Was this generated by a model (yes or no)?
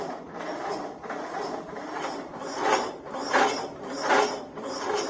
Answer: yes